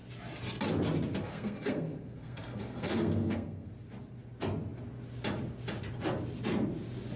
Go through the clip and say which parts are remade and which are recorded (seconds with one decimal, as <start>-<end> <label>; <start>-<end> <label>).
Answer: 0.0-1.3 recorded; 1.3-3.7 remade; 3.7-7.2 recorded